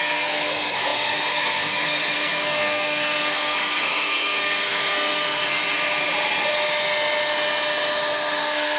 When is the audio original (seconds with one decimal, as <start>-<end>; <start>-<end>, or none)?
5.6-8.4